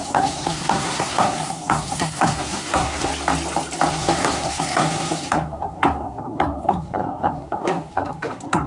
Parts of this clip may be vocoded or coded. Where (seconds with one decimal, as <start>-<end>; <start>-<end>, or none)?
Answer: 0.0-3.1; 3.9-8.7